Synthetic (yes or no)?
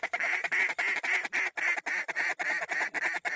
no